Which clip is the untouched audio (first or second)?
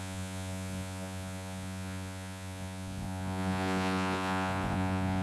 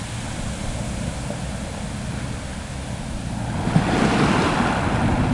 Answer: second